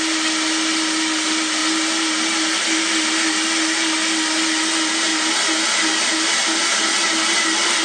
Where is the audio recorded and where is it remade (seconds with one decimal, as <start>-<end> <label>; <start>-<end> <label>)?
0.0-7.8 recorded